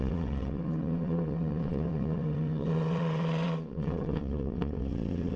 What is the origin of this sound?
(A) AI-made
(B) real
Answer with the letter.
A